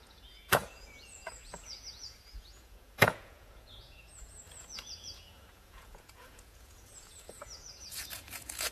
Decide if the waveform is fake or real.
fake